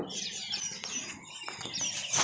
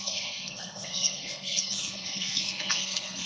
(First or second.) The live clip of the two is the first